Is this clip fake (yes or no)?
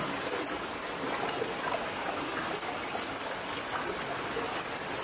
no